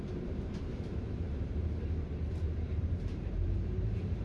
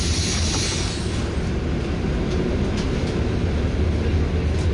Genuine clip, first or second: second